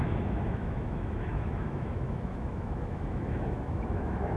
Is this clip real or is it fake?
fake